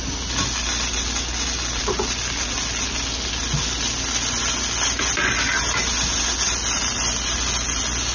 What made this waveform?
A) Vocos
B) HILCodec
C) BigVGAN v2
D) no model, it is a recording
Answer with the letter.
D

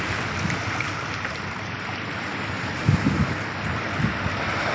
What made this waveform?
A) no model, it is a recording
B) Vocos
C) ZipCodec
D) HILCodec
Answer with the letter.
A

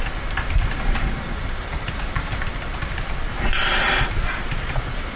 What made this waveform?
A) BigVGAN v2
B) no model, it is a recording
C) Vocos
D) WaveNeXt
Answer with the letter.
A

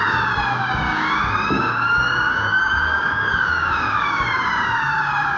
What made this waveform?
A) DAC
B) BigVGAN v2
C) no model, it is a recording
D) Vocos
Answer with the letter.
A